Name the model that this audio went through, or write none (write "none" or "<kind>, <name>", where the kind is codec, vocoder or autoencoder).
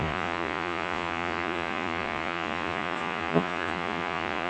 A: vocoder, Vocos